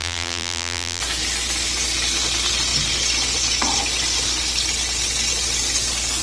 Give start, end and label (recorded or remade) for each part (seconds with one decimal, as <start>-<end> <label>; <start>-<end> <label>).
0.0-1.0 remade; 1.0-6.2 recorded